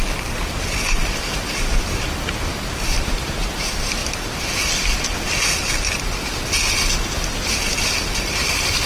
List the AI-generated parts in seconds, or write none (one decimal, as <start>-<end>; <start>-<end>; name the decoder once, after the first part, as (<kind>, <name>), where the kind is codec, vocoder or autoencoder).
none